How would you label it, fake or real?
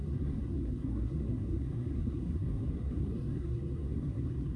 fake